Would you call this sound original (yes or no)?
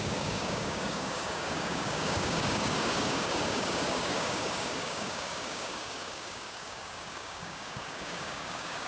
no